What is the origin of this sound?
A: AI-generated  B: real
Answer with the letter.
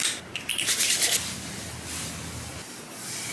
B